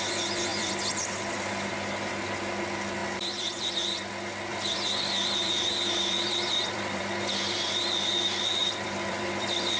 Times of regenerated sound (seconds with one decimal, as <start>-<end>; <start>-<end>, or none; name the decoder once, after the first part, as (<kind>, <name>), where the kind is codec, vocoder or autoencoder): 0.5-1.7 (vocoder, BigVGAN v2); 3.0-4.1; 4.5-9.8